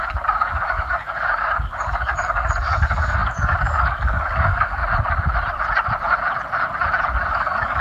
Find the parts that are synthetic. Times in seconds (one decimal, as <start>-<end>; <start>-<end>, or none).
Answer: 0.0-4.8; 7.3-7.8